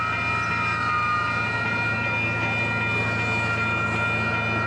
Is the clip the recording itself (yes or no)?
yes